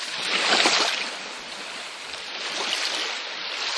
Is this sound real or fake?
real